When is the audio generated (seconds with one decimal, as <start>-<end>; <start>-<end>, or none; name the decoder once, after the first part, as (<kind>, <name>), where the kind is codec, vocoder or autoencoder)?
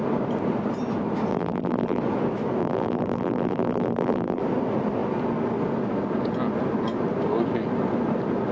1.3-2.0 (vocoder, BigVGAN v2); 2.6-4.4